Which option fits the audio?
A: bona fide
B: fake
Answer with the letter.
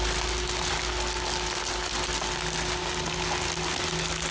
A